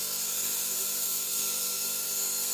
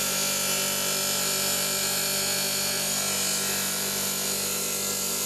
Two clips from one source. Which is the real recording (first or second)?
second